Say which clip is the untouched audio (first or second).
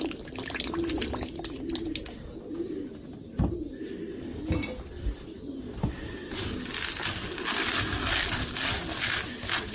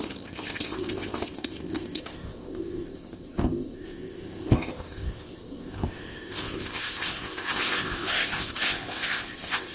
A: first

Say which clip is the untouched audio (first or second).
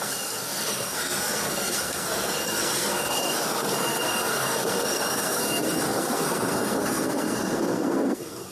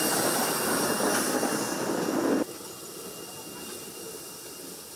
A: second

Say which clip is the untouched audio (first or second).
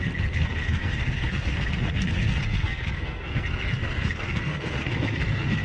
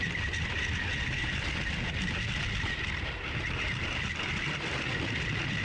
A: second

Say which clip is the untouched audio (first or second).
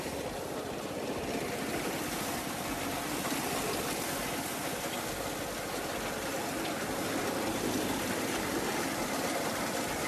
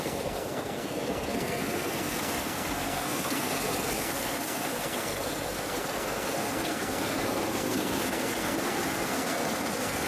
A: first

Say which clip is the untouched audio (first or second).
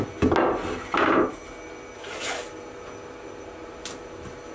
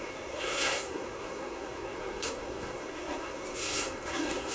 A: first